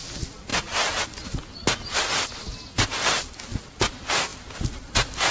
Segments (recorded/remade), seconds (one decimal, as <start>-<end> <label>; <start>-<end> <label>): 0.0-5.3 recorded